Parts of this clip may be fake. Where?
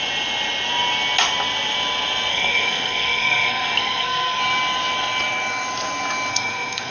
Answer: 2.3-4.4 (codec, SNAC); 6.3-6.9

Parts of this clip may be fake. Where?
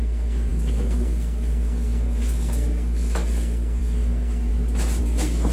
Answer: 0.0-4.5 (codec, SNAC); 5.0-5.5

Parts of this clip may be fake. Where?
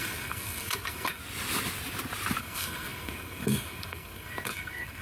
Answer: 0.0-1.2 (codec, SNAC); 2.4-5.0